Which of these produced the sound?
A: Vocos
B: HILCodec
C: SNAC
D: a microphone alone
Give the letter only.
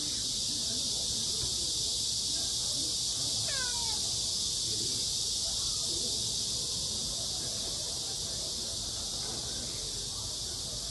D